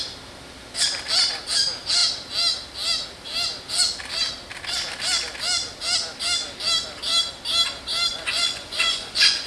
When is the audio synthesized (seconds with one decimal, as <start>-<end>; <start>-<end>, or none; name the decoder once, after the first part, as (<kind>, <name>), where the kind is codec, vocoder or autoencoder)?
8.1-9.5 (vocoder, Vocos)